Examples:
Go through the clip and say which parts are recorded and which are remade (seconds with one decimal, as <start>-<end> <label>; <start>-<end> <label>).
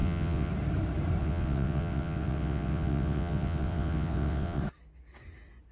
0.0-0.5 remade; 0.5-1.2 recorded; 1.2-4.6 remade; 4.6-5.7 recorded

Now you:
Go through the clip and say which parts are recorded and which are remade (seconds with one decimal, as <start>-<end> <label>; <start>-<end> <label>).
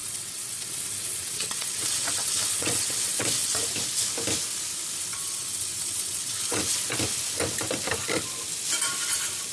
0.0-3.6 remade; 3.6-5.1 recorded; 5.1-6.6 remade; 6.6-9.5 recorded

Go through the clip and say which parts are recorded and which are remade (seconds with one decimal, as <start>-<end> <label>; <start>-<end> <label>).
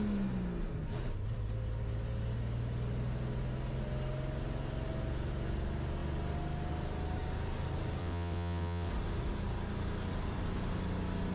0.0-8.0 recorded; 8.0-8.9 remade; 8.9-11.3 recorded